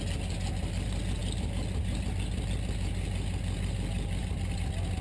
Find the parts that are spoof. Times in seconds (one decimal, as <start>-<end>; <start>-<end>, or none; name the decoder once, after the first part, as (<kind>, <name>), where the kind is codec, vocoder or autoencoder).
none